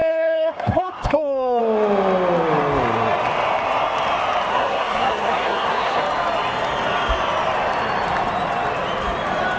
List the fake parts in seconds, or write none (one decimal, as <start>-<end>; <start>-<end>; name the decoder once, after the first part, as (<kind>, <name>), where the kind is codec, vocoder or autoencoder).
0.0-1.6 (codec, SNAC); 4.5-6.0